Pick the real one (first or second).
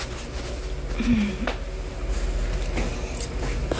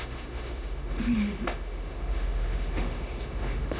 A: first